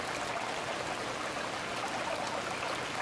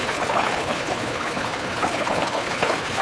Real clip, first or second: first